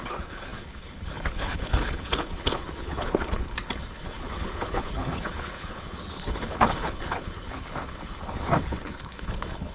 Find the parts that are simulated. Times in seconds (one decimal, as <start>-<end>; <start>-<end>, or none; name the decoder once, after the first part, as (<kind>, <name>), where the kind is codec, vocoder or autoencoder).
0.0-9.7 (codec, HILCodec)